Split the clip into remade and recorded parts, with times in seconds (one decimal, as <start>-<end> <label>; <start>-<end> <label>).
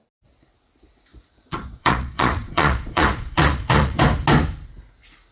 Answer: 0.0-1.1 recorded; 1.1-4.0 remade; 4.0-5.3 recorded